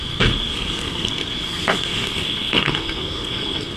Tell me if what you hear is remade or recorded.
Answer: remade